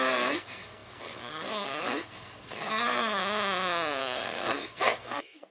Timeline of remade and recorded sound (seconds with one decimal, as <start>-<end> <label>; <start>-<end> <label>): 0.0-3.2 remade; 3.2-4.0 recorded; 4.0-5.5 remade